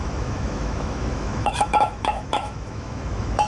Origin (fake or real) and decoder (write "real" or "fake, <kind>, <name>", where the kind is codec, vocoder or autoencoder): fake, autoencoder, DAC-VAE